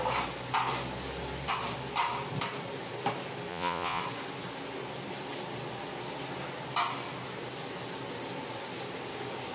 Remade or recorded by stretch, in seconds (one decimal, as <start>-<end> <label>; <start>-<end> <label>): 0.0-3.5 recorded; 3.5-4.0 remade; 4.0-9.5 recorded